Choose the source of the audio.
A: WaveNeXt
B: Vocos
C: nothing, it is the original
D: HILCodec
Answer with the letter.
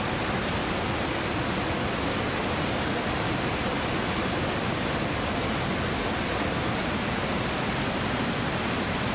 C